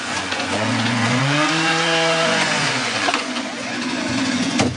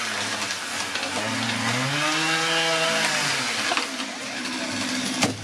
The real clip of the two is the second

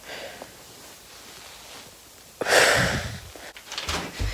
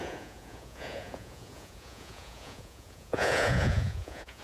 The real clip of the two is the first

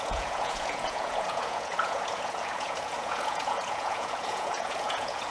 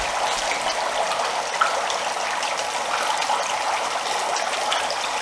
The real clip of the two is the second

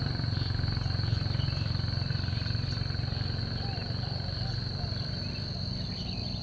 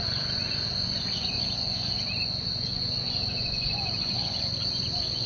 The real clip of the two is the first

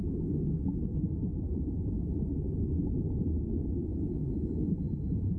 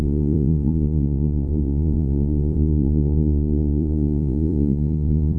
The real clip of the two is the first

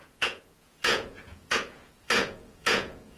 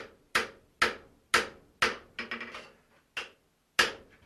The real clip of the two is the second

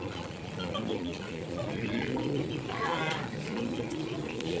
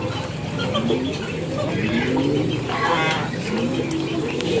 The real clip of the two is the second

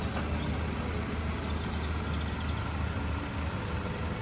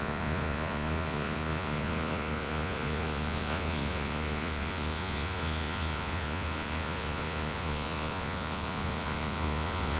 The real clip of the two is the first